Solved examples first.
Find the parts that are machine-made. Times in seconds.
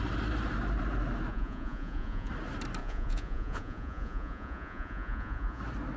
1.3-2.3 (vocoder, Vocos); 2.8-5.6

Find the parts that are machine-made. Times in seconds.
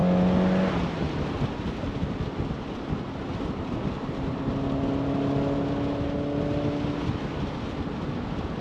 none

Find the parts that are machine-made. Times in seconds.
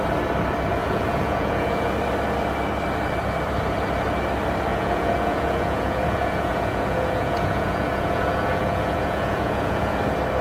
0.8-1.9 (vocoder, Vocos); 4.7-10.0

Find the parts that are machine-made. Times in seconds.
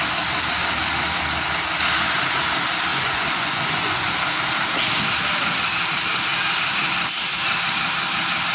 2.9-4.1 (vocoder, Vocos)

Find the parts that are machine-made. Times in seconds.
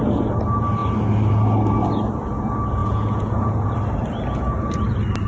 2.8-3.7 (vocoder, Vocos)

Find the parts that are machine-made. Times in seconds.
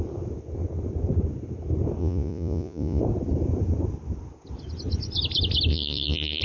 2.0-3.0 (vocoder, Vocos); 5.7-6.4